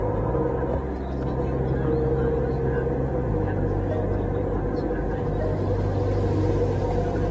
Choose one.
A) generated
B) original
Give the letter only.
B